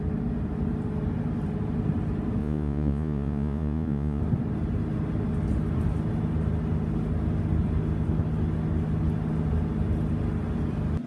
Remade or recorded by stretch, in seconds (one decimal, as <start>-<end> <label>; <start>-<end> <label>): 0.0-2.4 recorded; 2.4-4.2 remade; 4.2-11.1 recorded